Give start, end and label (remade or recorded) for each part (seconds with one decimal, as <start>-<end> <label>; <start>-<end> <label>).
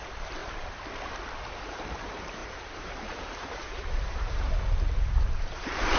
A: 0.0-0.4 remade; 0.4-1.6 recorded; 1.6-6.0 remade